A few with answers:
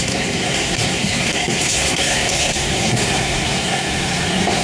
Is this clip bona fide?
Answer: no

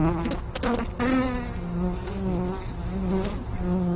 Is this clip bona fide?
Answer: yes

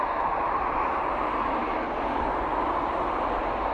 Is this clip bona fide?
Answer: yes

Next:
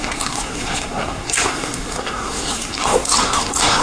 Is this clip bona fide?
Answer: no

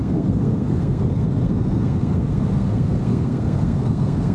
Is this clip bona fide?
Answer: no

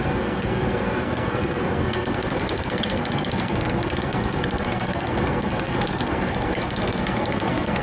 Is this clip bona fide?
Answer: no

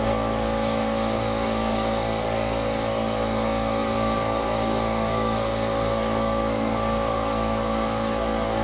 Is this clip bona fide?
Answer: no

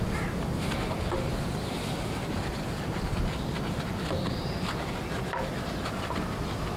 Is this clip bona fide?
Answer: yes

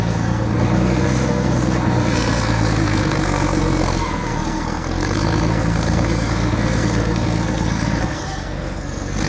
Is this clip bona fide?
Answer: no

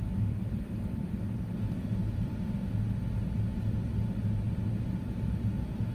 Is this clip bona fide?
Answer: yes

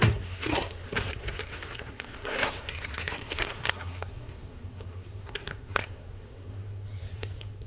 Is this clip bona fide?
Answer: no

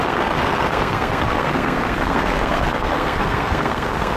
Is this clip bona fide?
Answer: no